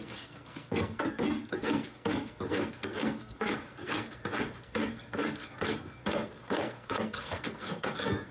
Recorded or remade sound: remade